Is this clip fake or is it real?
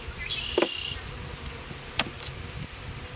real